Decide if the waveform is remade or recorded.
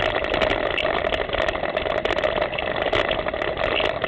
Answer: recorded